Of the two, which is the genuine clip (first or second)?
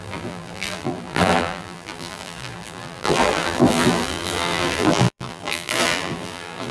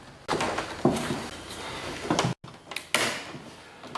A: second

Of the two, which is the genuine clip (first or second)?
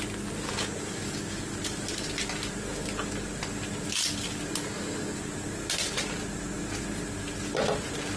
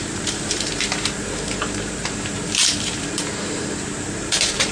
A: first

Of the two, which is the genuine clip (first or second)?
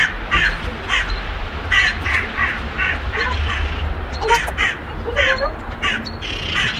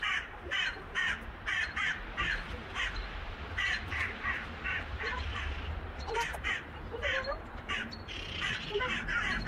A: first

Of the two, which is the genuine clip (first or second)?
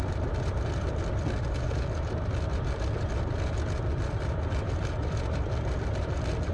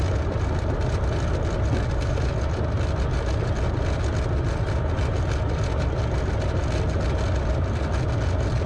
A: second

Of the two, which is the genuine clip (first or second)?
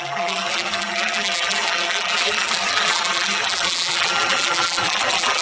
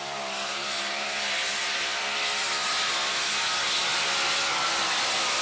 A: second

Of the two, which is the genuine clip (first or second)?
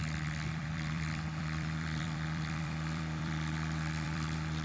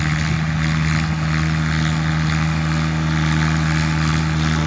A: second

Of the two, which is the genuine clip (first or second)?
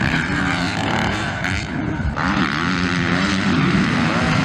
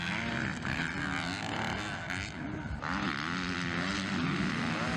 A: second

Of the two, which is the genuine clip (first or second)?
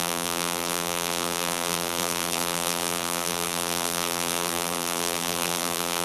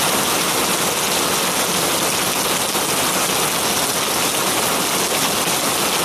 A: second